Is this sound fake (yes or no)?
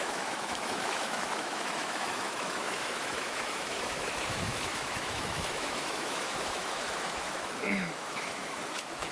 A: yes